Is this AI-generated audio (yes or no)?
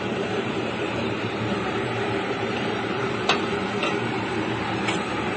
yes